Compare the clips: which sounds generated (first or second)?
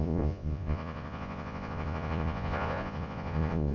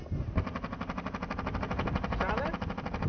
first